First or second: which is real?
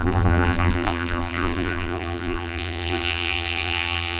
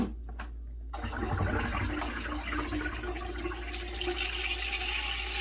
second